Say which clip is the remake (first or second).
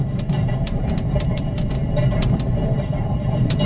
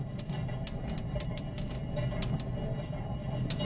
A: first